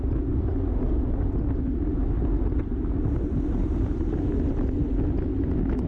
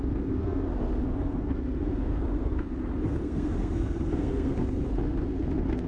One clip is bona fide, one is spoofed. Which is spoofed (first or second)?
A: second